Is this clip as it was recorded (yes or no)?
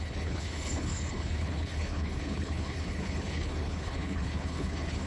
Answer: no